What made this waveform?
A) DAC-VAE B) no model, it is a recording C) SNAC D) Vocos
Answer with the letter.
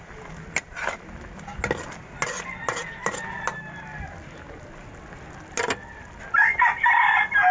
B